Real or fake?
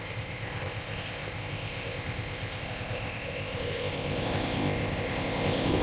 fake